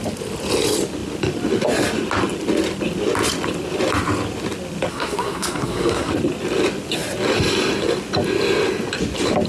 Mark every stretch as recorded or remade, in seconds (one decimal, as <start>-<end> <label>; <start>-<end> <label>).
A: 0.0-4.9 recorded; 4.9-6.1 remade; 6.1-9.5 recorded